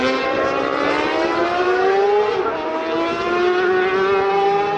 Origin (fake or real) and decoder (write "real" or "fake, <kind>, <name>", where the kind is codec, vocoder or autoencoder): real